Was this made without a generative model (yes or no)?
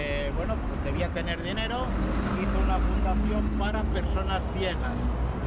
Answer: yes